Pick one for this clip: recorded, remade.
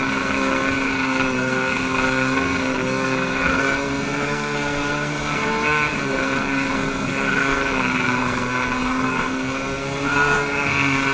remade